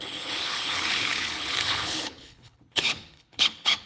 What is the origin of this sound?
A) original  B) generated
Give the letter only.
B